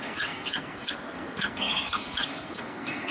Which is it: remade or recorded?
remade